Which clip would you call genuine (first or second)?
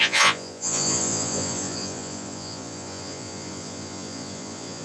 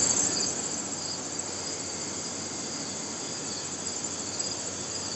second